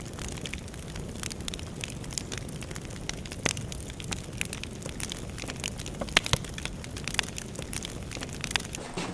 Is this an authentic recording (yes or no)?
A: yes